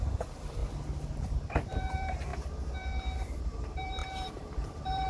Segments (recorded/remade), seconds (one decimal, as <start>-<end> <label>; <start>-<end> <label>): 0.0-0.6 remade; 0.6-1.8 recorded; 1.8-5.1 remade

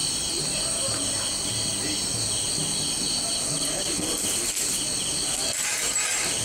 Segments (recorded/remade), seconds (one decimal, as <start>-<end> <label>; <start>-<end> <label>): 0.0-6.4 recorded

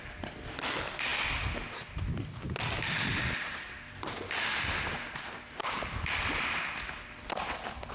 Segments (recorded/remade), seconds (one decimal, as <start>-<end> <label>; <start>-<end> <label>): 0.0-7.9 recorded

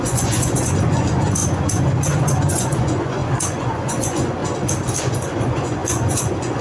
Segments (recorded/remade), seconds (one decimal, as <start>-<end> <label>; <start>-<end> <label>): 0.0-4.4 remade; 4.4-5.0 recorded; 5.0-6.6 remade